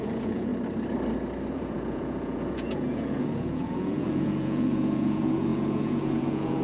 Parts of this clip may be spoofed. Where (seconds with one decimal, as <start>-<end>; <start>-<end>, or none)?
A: 0.0-0.5; 1.5-6.6

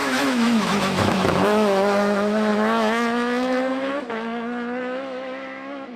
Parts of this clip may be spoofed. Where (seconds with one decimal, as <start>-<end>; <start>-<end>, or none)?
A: 0.0-6.0